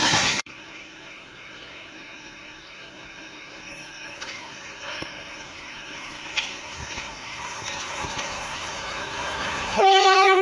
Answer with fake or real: fake